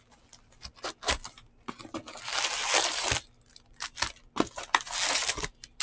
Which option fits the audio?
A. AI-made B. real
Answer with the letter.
B